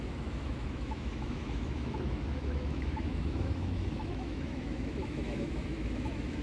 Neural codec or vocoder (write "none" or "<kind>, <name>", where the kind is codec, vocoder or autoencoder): autoencoder, DAC-VAE